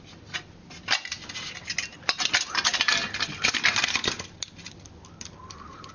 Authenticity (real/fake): real